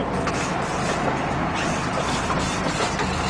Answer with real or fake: real